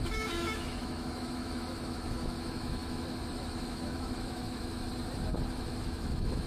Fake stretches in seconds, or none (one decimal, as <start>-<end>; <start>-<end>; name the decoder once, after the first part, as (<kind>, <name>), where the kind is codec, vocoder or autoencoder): 0.0-4.9 (autoencoder, DAC-VAE); 5.5-6.5